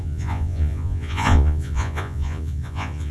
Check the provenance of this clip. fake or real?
fake